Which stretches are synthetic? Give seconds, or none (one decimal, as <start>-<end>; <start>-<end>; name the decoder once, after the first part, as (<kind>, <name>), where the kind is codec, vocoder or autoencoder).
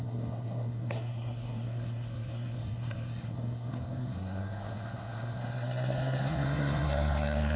0.0-7.6 (codec, SNAC)